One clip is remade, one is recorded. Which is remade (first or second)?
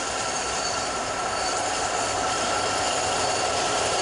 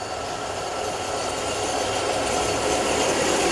first